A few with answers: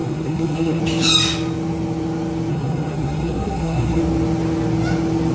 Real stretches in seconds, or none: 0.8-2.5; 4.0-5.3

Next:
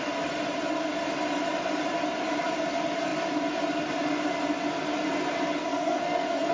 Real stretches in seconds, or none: 0.0-5.6

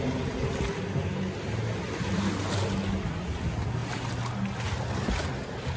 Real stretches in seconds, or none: 0.0-5.8

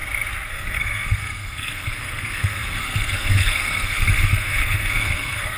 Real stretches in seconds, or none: 0.0-0.5

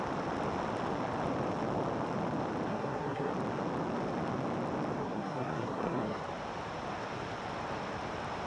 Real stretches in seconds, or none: 0.0-2.7; 3.3-5.0; 6.2-8.5